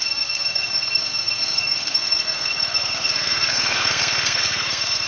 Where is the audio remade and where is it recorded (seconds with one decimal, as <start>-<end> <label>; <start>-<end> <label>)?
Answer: 0.0-5.1 remade